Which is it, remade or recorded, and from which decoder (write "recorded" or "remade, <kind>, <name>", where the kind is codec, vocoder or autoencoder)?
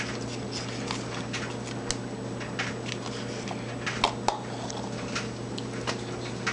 recorded